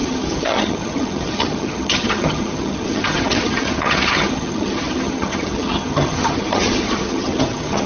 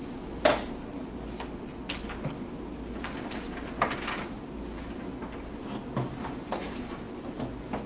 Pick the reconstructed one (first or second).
first